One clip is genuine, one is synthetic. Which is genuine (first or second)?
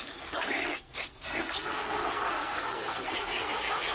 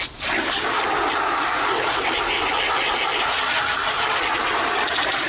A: second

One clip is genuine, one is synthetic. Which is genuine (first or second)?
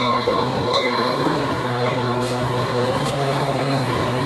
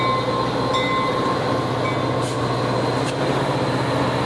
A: second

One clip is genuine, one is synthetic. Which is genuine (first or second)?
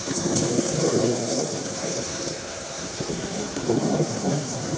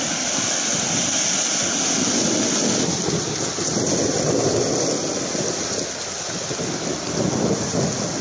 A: second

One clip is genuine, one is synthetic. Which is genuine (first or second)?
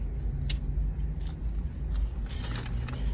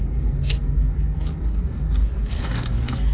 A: first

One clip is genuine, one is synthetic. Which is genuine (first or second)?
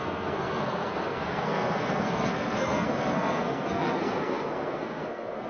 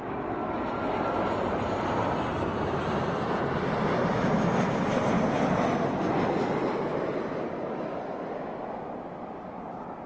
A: second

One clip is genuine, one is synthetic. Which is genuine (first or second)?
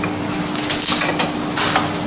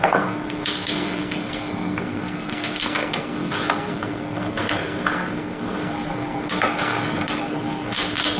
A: first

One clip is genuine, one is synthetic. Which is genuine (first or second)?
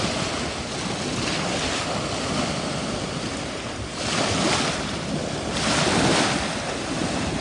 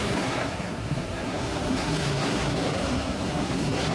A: first